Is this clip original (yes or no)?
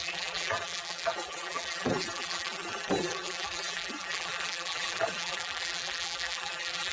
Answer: no